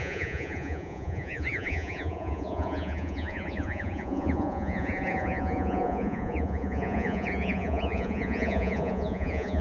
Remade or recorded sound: remade